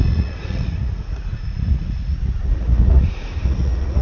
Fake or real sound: fake